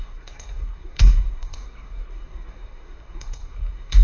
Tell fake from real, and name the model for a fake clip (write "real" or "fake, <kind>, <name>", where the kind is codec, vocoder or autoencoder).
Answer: fake, codec, SNAC